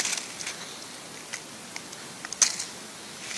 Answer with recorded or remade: recorded